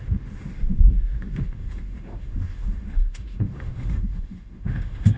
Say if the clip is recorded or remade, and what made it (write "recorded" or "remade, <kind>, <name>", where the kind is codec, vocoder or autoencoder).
remade, autoencoder, DAC-VAE